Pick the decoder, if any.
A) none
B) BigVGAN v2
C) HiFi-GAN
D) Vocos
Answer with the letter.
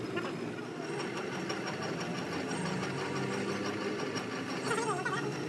A